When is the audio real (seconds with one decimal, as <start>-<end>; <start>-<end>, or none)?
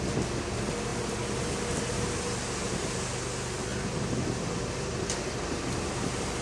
0.0-6.4